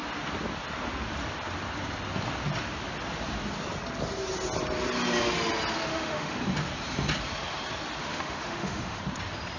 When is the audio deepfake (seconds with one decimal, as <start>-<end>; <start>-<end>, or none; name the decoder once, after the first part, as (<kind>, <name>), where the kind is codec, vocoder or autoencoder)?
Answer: 5.9-6.4 (autoencoder, DAC-VAE); 8.0-9.0